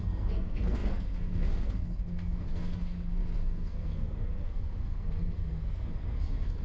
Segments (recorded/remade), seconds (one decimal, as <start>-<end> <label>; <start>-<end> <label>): 0.0-6.6 remade